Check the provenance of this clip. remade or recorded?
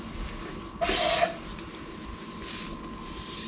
recorded